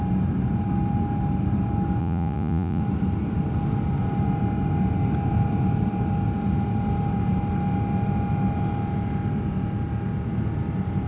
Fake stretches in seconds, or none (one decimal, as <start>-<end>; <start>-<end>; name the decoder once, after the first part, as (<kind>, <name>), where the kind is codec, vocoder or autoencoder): 2.0-2.8 (vocoder, Vocos)